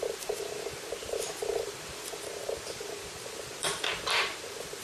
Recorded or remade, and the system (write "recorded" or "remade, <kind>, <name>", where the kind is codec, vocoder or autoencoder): remade, vocoder, BigVGAN v2